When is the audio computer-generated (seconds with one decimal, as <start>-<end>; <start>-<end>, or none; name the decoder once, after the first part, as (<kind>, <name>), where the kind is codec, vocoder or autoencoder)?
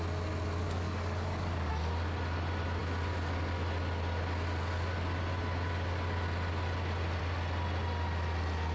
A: 0.6-1.7 (codec, DAC)